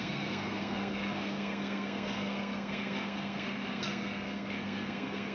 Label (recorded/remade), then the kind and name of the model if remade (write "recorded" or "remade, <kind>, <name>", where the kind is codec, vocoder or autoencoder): remade, codec, SNAC